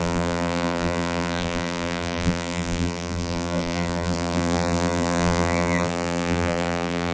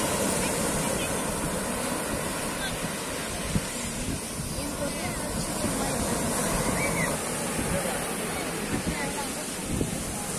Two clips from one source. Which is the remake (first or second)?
first